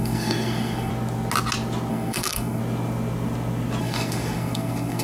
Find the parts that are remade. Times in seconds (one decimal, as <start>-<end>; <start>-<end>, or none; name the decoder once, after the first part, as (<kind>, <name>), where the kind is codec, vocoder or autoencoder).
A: 0.0-0.9 (codec, SNAC); 1.9-2.6; 3.8-5.0